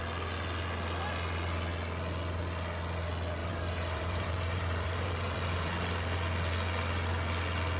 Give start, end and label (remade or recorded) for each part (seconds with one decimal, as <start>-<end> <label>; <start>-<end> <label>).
0.0-3.4 recorded; 3.4-5.7 remade; 5.7-7.8 recorded